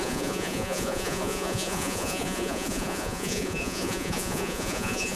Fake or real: fake